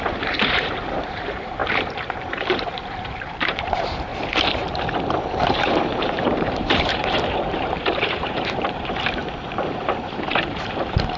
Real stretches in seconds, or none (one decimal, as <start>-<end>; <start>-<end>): 4.1-5.0; 9.2-9.8